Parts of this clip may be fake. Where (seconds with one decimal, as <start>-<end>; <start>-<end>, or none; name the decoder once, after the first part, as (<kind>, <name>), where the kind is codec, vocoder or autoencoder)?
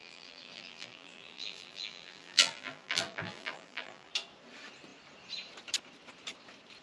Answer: 0.0-4.1 (vocoder, BigVGAN v2)